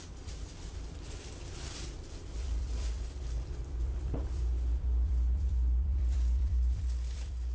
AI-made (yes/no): yes